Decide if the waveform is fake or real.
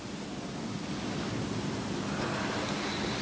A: real